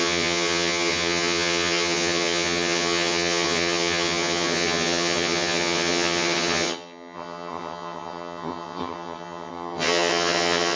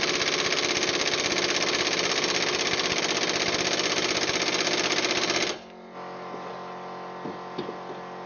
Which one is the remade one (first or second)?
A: first